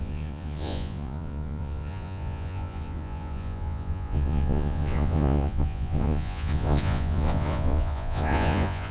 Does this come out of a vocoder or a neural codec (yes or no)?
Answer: yes